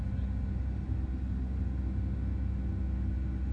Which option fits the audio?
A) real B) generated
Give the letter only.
A